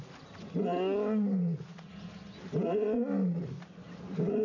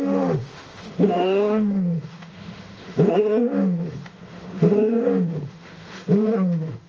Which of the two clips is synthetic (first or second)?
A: second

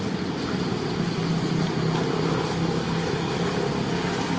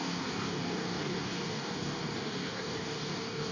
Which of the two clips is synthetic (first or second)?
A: second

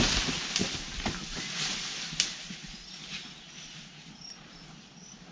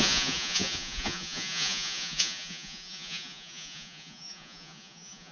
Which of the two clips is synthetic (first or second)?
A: second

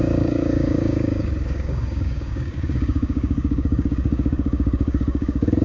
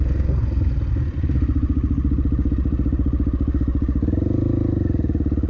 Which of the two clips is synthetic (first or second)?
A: first